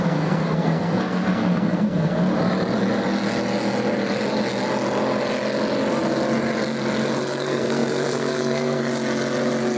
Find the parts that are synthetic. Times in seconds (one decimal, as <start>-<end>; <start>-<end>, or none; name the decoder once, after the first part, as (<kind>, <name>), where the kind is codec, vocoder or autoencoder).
0.0-2.2 (codec, SNAC); 7.2-8.9